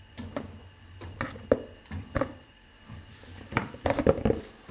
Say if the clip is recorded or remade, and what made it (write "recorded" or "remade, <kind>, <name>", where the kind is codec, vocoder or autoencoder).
remade, vocoder, BigVGAN v2